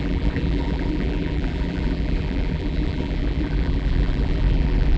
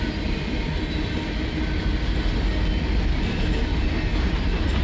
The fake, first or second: first